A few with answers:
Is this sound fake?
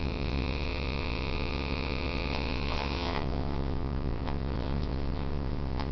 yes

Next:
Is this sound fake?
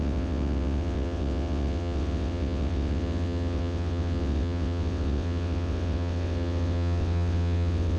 yes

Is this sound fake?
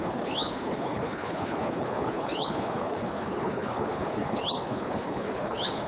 yes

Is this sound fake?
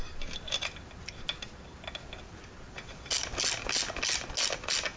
no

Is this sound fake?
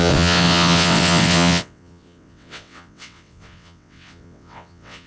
yes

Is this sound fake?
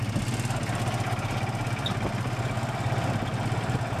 no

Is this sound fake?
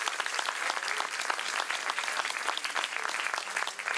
no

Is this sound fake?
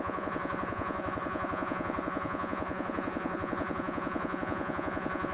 yes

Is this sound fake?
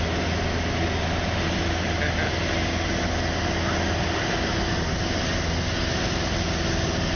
no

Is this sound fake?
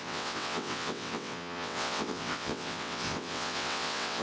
yes